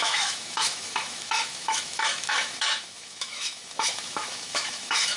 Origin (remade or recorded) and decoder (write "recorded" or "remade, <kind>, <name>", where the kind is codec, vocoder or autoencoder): remade, autoencoder, DAC-VAE